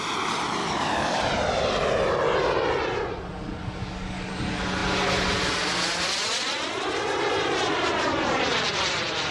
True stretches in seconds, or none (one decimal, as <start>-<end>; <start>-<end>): 0.0-0.6; 1.2-3.6; 4.3-9.3